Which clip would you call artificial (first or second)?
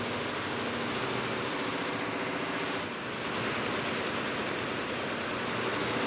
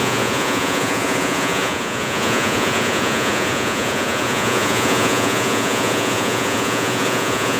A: second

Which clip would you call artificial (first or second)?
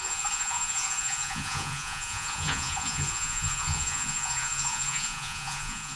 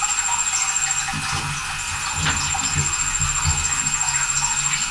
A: first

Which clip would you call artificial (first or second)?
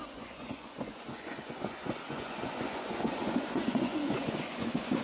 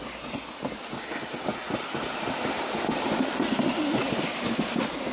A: first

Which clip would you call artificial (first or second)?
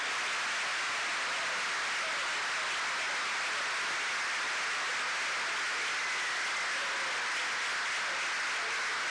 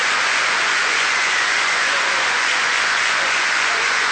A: second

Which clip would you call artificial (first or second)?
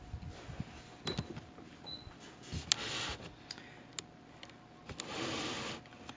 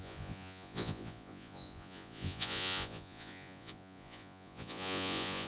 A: second